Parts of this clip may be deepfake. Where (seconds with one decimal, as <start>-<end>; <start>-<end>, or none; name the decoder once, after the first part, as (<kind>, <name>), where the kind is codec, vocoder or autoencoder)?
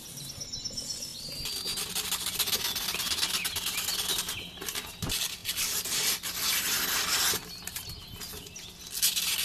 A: none